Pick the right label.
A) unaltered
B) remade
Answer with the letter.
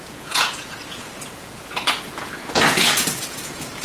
B